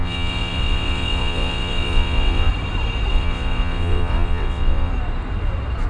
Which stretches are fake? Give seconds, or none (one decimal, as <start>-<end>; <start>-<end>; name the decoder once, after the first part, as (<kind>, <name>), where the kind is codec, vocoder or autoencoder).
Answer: 0.0-2.5 (vocoder, WaveNeXt); 3.1-4.9